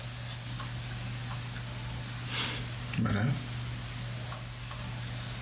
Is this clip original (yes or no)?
yes